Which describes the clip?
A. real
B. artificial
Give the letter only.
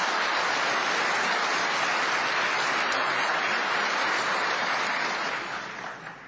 A